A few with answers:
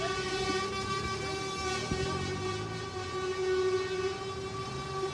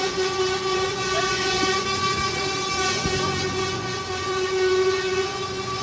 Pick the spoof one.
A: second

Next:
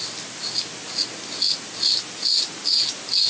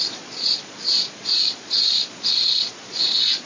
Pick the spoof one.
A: second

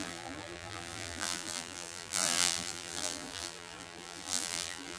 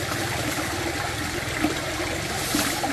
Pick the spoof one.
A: first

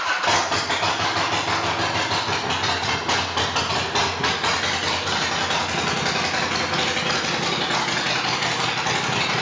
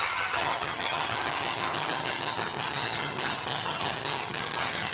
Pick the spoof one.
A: second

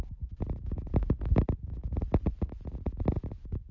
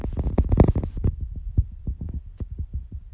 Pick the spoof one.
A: second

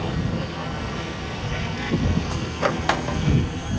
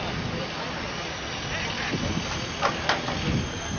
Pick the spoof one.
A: first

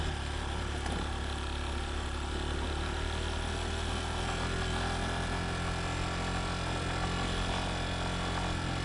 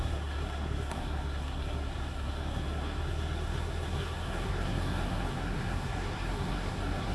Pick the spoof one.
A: second